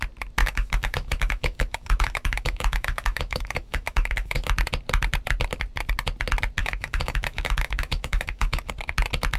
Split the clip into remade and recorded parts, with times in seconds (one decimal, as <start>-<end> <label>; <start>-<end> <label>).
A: 0.0-0.4 recorded; 0.4-4.5 remade; 4.5-6.6 recorded; 6.6-8.7 remade; 8.7-9.4 recorded

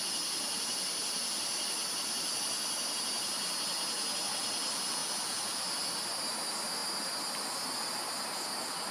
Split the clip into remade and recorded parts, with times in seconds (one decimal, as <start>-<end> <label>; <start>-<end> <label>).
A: 0.0-8.9 recorded

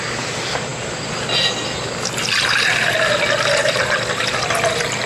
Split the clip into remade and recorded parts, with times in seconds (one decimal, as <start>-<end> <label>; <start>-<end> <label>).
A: 0.0-5.1 recorded

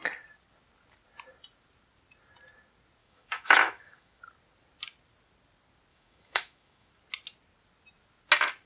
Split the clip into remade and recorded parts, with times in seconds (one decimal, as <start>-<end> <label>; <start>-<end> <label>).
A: 0.0-3.0 recorded; 3.0-4.2 remade; 4.2-5.9 recorded; 5.9-6.9 remade; 6.9-8.7 recorded